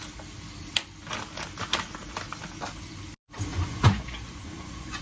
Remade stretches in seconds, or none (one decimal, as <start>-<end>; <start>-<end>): 3.5-5.0